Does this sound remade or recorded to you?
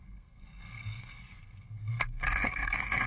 remade